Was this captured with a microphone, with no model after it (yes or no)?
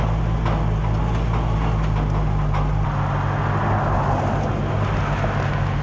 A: yes